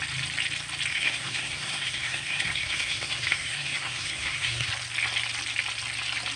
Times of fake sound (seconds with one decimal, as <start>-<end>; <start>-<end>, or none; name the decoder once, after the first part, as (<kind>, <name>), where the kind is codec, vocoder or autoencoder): 0.9-4.7 (codec, SNAC)